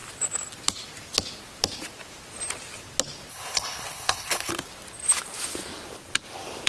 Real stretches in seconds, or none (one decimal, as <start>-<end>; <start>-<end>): 0.0-3.3; 4.5-6.7

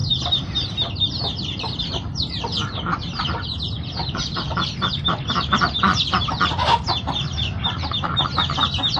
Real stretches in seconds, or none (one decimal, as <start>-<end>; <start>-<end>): 2.5-4.0

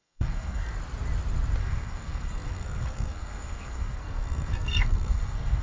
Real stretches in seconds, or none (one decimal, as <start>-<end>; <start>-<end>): 0.7-1.6

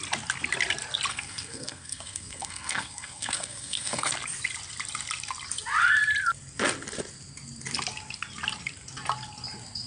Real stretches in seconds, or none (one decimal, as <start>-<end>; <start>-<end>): 0.0-1.1; 4.1-9.9

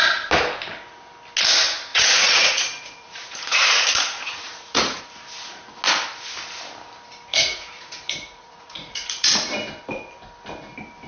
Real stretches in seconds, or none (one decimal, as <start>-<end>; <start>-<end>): 0.0-1.9; 5.0-7.3; 9.5-11.1

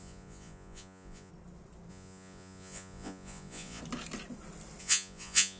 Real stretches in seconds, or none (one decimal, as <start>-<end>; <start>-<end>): 1.3-1.9; 3.8-4.8

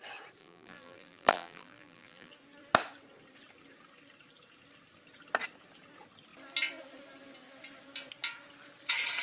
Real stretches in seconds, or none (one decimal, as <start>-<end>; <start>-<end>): 0.0-0.4; 2.3-9.2